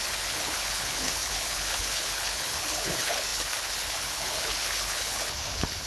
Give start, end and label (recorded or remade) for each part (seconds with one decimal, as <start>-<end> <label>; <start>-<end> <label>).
0.0-5.9 remade